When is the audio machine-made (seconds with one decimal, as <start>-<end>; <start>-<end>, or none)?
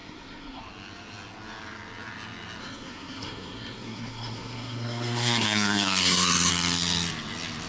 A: 0.0-0.6; 2.6-6.5